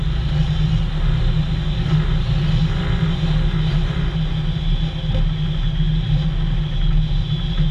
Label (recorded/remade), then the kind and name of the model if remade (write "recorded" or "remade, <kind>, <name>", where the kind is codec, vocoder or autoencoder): recorded